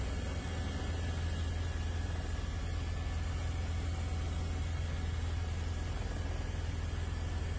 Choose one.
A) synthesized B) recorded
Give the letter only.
B